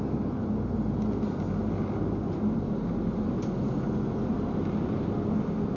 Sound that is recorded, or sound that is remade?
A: recorded